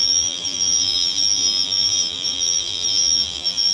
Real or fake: fake